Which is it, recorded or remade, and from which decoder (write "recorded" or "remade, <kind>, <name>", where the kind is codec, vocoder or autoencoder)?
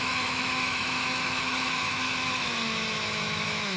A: remade, autoencoder, DAC-VAE